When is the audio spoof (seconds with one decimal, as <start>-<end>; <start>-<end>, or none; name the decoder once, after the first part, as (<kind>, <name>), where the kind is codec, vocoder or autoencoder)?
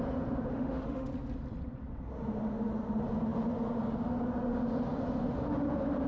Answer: 0.5-1.1 (autoencoder, DAC-VAE)